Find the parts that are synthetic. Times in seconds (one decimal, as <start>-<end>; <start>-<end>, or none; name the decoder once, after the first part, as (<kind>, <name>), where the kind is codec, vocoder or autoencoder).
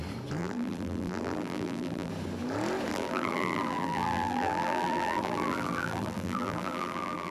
0.4-2.1 (vocoder, BigVGAN v2); 2.9-7.3